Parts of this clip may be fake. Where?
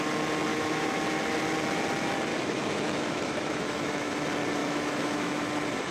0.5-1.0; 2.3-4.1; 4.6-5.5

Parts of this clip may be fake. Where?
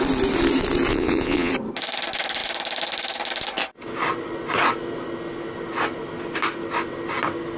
0.9-1.5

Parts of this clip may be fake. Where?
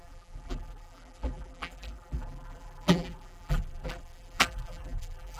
0.0-5.4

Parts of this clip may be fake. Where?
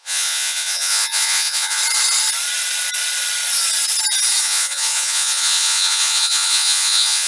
0.0-1.8; 4.4-7.3